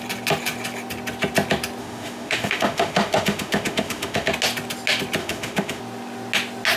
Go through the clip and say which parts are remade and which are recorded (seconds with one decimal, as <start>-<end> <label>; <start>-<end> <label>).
0.0-1.8 recorded; 1.8-4.3 remade; 4.3-5.2 recorded; 5.2-5.8 remade; 5.8-6.8 recorded